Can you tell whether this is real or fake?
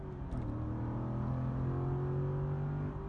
real